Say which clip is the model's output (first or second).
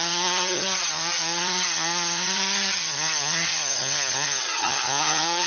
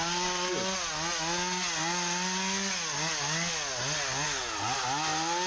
first